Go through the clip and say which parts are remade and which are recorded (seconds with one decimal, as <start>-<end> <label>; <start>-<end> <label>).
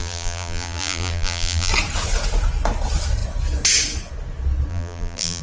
0.0-1.7 remade; 1.7-4.7 recorded; 4.7-5.4 remade